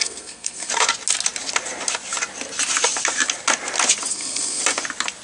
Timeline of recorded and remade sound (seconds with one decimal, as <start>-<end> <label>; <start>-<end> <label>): 0.0-0.7 remade; 0.7-4.1 recorded; 4.1-4.6 remade; 4.6-5.2 recorded